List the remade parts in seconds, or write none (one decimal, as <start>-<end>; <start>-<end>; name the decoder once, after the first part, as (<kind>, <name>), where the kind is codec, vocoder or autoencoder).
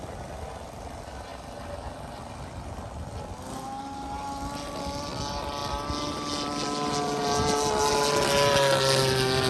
none